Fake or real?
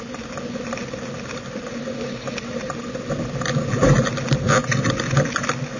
real